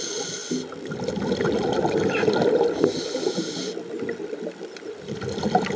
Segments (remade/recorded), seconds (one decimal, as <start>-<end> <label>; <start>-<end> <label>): 0.0-5.8 recorded